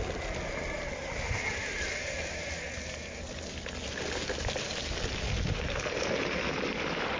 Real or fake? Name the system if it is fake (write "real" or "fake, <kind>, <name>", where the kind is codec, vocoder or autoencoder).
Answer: real